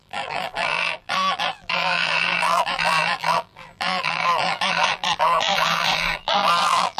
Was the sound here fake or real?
fake